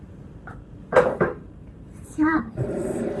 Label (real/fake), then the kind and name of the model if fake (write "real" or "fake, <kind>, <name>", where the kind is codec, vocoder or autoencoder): fake, vocoder, BigVGAN v2